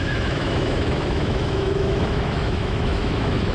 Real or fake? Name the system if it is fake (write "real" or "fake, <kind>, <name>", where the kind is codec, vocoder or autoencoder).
fake, autoencoder, DAC-VAE